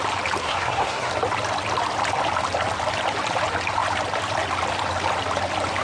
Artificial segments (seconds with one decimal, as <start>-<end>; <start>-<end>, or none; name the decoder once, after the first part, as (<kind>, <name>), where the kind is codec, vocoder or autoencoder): 0.4-1.1 (codec, SNAC)